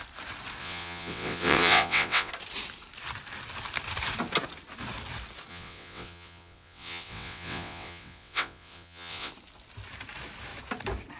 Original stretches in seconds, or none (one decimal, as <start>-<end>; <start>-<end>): 0.0-0.6; 2.3-5.5; 9.3-11.2